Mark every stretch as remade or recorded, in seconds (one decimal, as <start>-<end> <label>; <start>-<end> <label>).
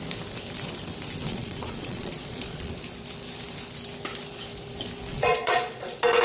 0.0-1.3 recorded; 1.3-2.7 remade; 2.7-5.1 recorded; 5.1-5.8 remade; 5.8-6.2 recorded